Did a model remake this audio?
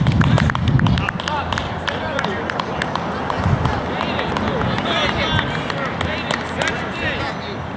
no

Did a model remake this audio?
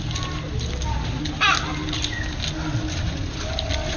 no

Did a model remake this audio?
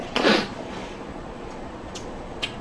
yes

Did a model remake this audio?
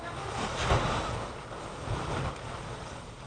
no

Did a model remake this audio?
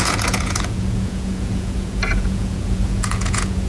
yes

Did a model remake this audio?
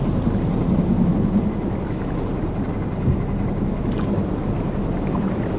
no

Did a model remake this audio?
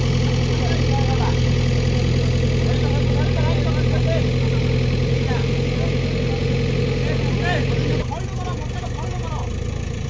no